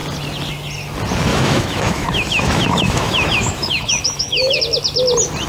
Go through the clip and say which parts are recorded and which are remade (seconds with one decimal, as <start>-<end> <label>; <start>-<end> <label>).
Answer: 0.0-1.3 recorded; 1.3-4.6 remade; 4.6-5.5 recorded